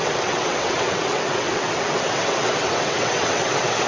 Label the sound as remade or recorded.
remade